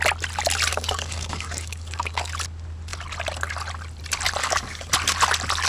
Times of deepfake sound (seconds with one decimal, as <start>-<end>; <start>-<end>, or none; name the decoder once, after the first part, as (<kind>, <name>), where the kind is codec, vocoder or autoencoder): 0.7-2.3 (codec, DAC); 4.4-4.9